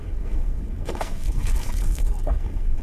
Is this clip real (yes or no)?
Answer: no